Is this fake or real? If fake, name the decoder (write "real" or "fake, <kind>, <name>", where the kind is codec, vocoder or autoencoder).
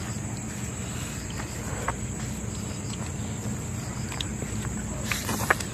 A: fake, vocoder, BigVGAN v2